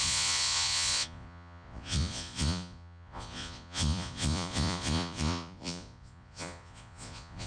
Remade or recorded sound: remade